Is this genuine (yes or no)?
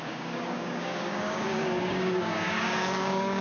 no